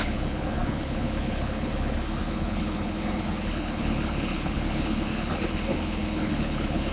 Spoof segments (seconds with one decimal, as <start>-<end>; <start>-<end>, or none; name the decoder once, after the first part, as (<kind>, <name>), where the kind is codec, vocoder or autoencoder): 0.0-6.9 (codec, HILCodec)